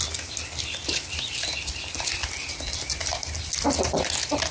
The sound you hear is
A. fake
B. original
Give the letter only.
B